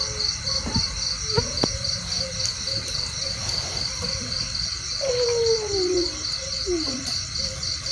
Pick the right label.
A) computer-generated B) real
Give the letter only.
A